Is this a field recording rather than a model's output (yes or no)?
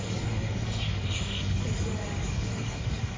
no